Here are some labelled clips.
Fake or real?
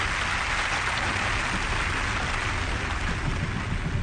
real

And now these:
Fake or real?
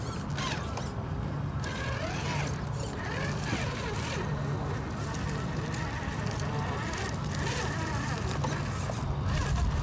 real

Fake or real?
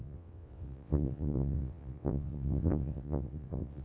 fake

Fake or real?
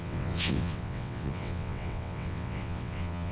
fake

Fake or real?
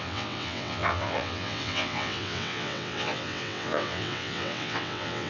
fake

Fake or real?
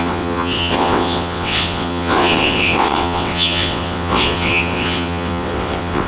fake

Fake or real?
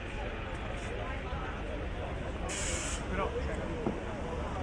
real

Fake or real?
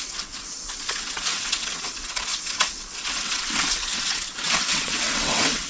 fake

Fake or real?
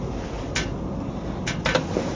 real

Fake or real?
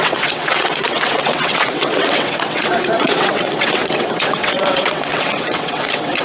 fake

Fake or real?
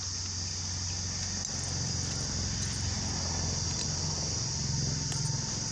real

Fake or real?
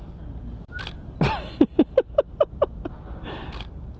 real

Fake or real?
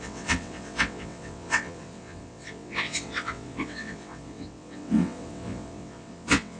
fake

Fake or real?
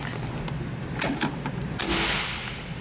real